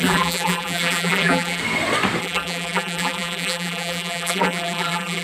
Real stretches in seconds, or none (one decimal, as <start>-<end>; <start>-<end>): 1.6-2.2